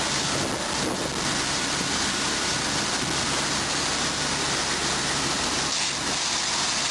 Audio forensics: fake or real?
real